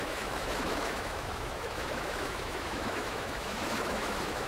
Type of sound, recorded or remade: remade